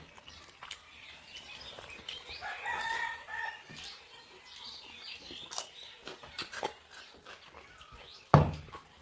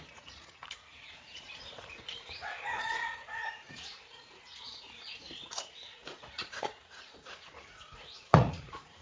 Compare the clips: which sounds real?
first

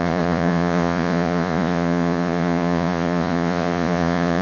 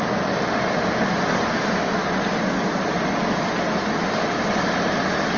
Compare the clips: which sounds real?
second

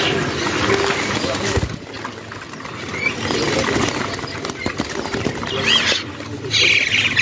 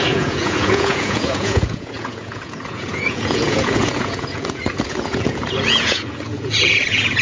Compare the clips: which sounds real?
first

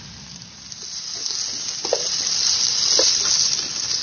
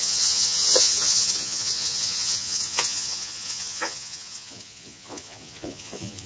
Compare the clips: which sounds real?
first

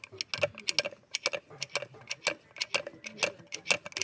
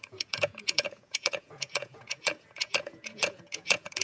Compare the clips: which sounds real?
first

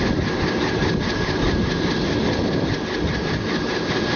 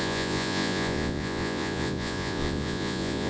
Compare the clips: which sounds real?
first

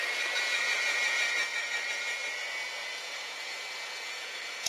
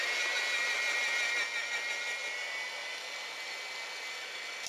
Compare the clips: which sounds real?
second